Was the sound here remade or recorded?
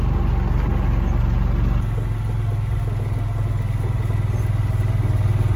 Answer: recorded